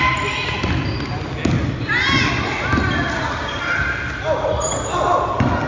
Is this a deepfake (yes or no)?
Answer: no